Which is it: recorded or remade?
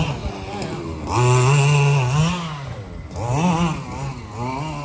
recorded